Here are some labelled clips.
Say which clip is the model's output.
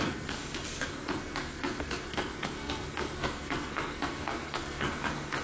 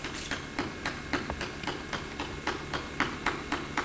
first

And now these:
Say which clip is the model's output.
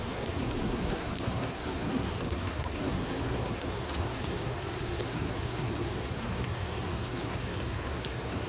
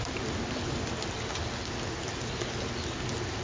first